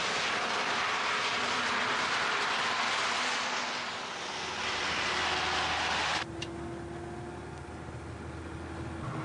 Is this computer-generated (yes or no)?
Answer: no